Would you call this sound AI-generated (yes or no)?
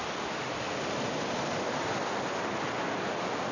no